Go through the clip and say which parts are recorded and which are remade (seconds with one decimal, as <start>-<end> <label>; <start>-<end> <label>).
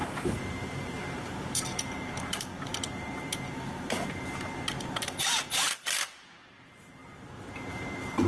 0.0-8.3 remade